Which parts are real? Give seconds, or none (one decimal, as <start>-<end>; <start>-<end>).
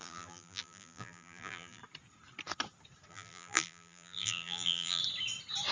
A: 1.8-3.1; 5.0-5.7